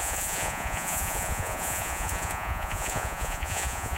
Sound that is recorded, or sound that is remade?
remade